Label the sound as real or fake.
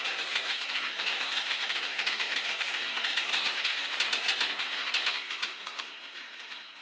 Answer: fake